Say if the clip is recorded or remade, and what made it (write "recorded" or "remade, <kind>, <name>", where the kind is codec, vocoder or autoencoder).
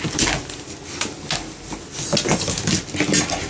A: recorded